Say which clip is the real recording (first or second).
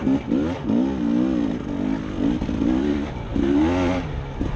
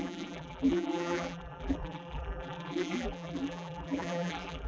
first